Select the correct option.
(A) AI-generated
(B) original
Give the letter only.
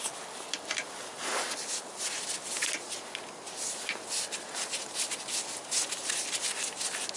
B